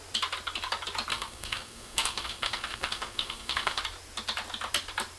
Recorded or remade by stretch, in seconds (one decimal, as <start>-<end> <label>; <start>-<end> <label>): 0.0-1.1 recorded; 1.1-3.8 remade; 3.8-5.2 recorded